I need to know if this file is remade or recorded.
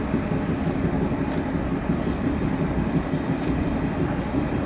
recorded